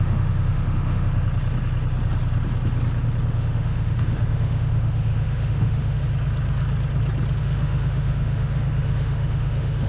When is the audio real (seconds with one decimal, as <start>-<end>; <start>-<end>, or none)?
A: 1.1-3.3; 6.0-7.4

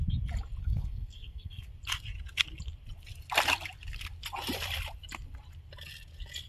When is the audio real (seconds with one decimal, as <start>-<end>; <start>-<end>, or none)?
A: 0.0-0.6; 1.7-6.5

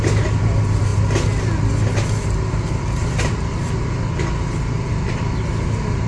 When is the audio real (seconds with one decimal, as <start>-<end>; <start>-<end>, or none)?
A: 0.0-6.1

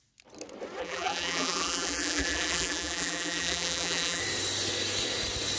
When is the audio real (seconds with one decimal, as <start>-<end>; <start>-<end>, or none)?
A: 0.0-0.8; 4.2-5.6

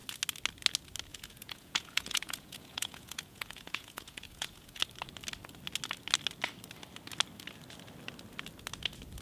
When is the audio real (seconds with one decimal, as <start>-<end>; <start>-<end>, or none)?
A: 0.0-1.1; 4.8-9.2

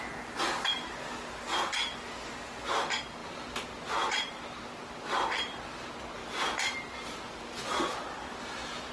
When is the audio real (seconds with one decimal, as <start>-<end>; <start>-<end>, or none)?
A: 0.0-3.2; 4.1-6.2; 8.4-8.9

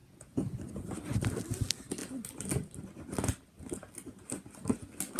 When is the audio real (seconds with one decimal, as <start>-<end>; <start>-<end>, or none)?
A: 0.6-5.2

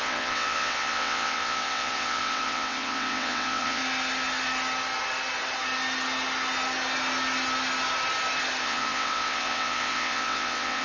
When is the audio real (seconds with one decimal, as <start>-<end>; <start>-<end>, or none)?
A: 3.8-8.6